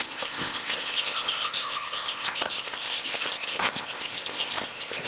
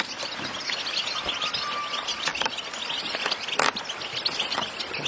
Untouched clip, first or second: second